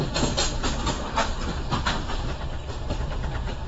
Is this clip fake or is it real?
real